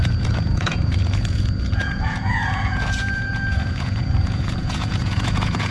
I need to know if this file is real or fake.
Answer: fake